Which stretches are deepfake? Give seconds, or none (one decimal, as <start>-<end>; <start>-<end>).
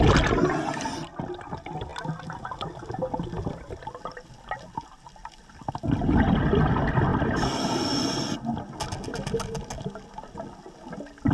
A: none